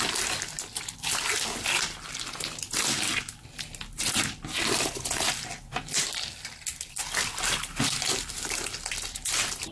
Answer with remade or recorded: recorded